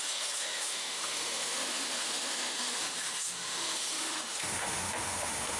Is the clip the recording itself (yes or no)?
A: no